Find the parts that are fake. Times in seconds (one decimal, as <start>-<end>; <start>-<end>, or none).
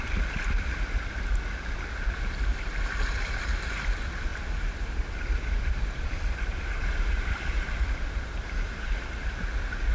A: 2.5-3.8; 4.3-9.3